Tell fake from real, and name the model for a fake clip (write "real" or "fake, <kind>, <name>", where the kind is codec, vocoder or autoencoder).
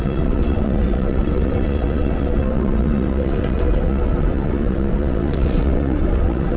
fake, vocoder, WaveNeXt